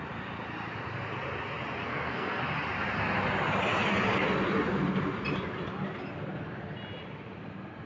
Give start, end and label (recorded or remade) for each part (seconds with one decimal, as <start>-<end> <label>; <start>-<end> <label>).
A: 0.0-1.8 recorded; 1.8-2.4 remade; 2.4-7.9 recorded